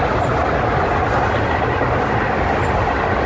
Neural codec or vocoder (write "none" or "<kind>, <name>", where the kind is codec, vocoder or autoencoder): none